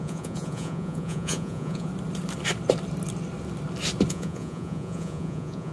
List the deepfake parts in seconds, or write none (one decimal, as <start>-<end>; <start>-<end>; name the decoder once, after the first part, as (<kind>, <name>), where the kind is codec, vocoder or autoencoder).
0.0-1.9 (vocoder, Vocos); 4.1-5.7